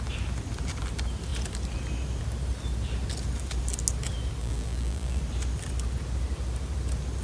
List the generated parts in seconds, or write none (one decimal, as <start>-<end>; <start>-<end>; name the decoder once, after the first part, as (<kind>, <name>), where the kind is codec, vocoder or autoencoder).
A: 4.4-5.2 (vocoder, BigVGAN v2)